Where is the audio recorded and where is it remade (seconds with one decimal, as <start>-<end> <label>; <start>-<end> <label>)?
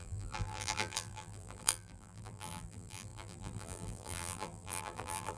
0.0-5.4 remade